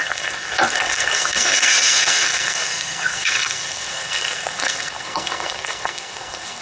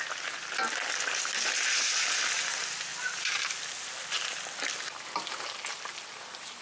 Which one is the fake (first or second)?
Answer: first